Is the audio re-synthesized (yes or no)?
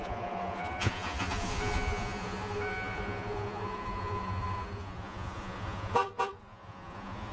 yes